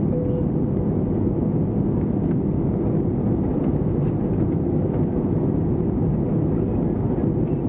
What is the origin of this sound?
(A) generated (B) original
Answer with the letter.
B